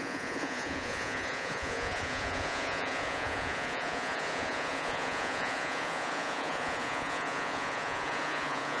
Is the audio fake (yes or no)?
yes